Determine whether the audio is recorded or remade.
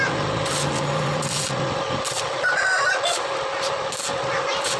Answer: recorded